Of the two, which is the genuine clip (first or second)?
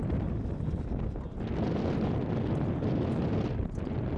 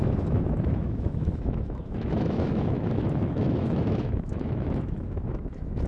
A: first